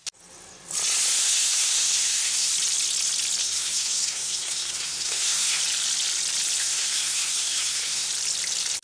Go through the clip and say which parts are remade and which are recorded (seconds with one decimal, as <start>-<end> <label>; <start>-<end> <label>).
0.0-1.2 recorded; 1.2-2.5 remade; 2.5-3.4 recorded; 3.4-5.6 remade; 5.6-6.6 recorded; 6.6-8.1 remade; 8.1-8.8 recorded